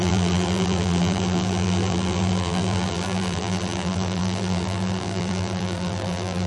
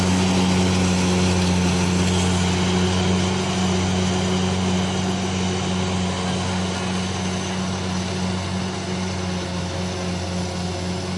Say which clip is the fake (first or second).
first